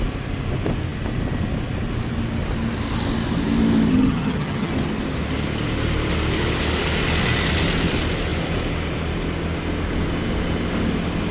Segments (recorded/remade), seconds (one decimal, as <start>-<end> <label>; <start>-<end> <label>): 0.0-3.9 recorded; 3.9-4.7 remade; 4.7-11.3 recorded